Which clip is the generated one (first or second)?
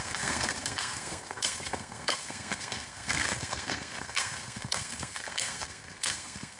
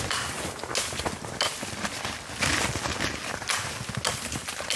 first